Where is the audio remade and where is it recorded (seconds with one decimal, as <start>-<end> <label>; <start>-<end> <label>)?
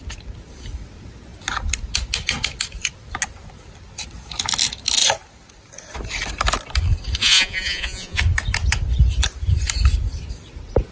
0.0-7.2 recorded; 7.2-8.2 remade; 8.2-10.9 recorded